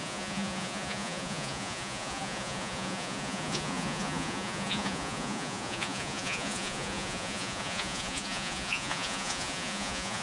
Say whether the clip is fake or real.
fake